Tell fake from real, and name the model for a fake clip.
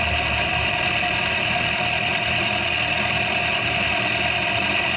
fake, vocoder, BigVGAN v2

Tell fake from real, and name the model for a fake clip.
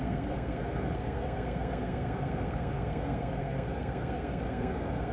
fake, codec, SNAC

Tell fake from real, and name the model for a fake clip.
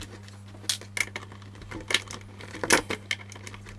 real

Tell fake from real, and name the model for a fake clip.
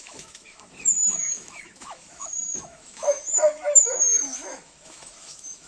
fake, autoencoder, DAC-VAE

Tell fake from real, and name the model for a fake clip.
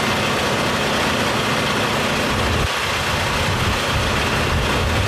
real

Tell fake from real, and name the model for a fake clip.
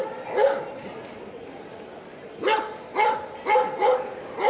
real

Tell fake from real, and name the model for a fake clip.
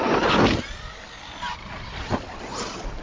real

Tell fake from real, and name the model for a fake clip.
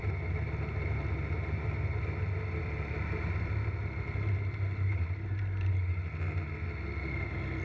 real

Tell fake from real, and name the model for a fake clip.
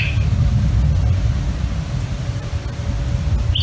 real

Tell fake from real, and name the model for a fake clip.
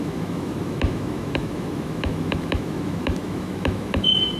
fake, autoencoder, DAC-VAE